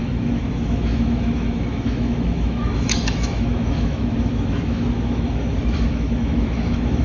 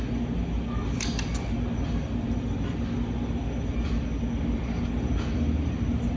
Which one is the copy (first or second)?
first